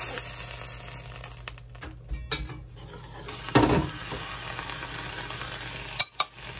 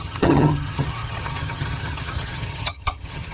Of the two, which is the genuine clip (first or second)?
first